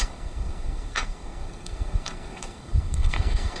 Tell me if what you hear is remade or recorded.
remade